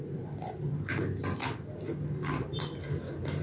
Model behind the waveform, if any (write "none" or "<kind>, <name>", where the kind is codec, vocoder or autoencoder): none